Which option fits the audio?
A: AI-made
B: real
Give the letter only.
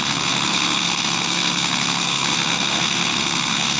A